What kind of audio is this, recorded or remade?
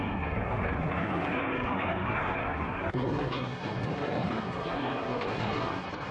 remade